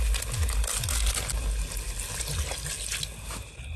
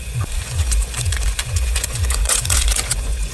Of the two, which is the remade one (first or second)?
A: second